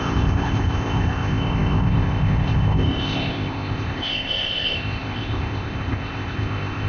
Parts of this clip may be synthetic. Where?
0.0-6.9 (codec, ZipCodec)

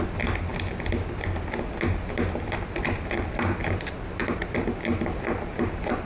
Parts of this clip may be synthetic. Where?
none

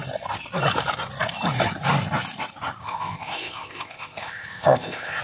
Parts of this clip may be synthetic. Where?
2.8-5.2 (codec, ZipCodec)